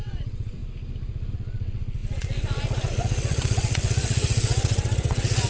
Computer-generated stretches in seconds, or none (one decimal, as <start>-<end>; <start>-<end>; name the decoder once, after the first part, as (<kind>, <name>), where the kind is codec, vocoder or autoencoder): 0.0-0.6 (vocoder, WaveNeXt); 1.3-5.5